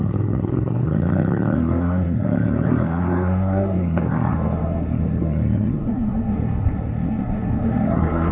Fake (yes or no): yes